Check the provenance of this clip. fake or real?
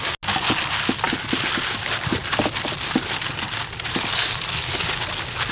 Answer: real